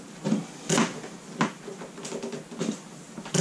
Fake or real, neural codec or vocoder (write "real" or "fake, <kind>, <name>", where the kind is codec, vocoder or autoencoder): real